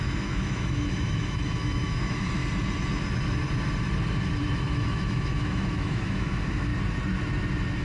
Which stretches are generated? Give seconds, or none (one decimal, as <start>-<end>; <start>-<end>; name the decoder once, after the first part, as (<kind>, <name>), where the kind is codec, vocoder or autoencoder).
0.0-2.4 (autoencoder, DAC-VAE); 4.5-6.7

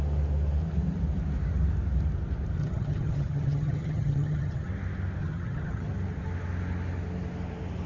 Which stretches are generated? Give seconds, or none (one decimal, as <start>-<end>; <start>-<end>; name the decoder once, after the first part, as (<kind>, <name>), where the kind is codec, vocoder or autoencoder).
2.6-4.7 (vocoder, HiFi-GAN); 5.2-5.9

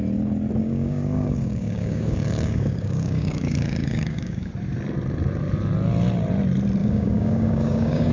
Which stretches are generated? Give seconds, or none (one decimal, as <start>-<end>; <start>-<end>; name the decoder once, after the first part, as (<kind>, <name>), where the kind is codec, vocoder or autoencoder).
0.6-4.5 (codec, DAC); 6.8-8.1

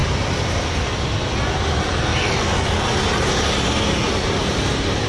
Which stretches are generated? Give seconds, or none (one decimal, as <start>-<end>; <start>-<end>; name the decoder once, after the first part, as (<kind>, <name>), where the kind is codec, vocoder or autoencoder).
1.3-2.1 (vocoder, BigVGAN v2); 2.9-5.1